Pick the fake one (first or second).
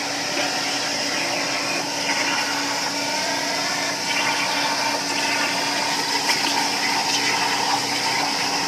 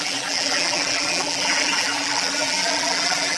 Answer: second